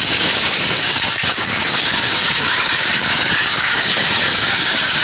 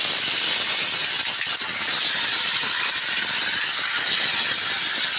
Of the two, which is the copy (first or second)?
first